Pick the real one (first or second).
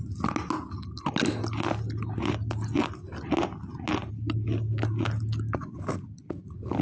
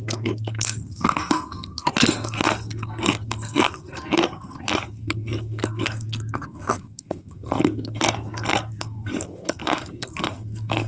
first